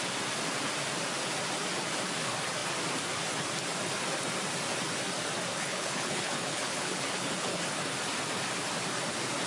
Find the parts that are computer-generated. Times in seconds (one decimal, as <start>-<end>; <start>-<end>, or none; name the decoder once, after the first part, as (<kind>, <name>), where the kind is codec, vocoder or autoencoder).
5.5-7.6 (codec, HILCodec)